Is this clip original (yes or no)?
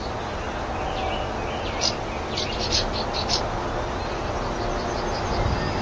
yes